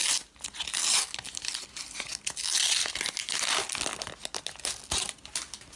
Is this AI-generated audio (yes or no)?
no